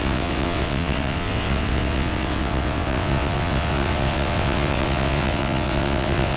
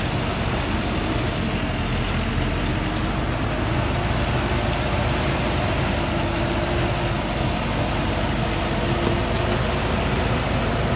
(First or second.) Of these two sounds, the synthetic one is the first